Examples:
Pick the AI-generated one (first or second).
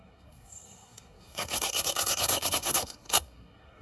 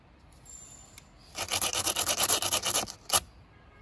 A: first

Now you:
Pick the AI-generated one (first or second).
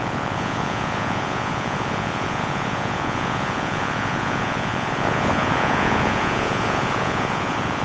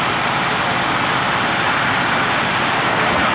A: first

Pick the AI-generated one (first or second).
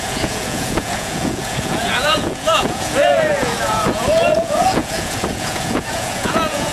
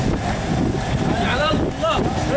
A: first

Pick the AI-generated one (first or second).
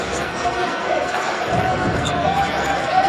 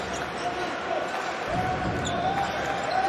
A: first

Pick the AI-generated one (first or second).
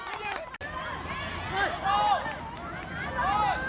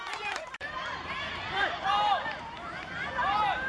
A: second